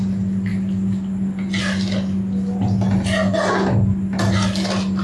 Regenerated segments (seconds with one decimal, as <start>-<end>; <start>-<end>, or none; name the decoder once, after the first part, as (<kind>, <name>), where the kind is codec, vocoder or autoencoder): none